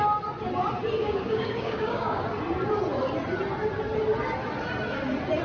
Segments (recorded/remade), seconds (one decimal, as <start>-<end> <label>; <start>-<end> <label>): 0.0-1.0 recorded; 1.0-2.2 remade; 2.2-5.4 recorded